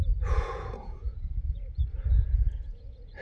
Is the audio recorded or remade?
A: remade